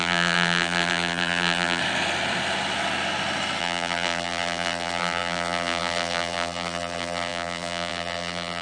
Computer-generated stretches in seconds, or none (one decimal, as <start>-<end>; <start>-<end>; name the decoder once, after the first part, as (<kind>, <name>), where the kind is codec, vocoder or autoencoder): 0.0-1.8 (vocoder, BigVGAN v2); 3.6-8.6